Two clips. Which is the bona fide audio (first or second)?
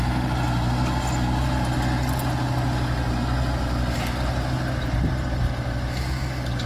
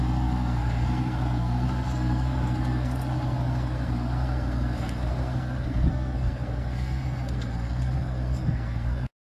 first